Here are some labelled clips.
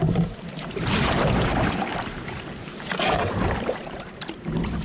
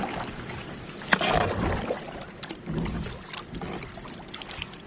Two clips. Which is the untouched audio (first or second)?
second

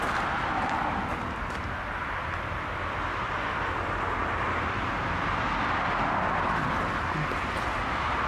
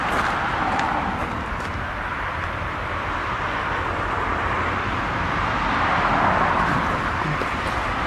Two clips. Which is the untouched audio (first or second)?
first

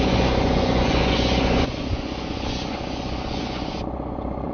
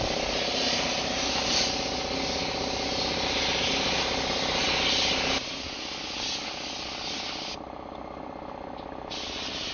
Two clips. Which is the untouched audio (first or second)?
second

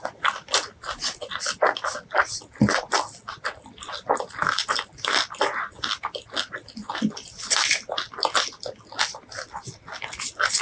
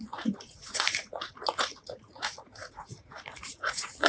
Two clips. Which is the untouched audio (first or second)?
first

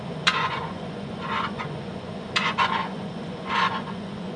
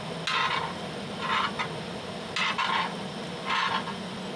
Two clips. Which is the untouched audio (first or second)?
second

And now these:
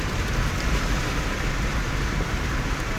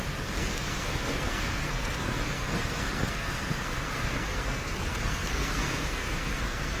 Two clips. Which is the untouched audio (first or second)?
first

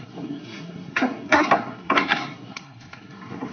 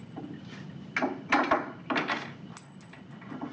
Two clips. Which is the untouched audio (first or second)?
second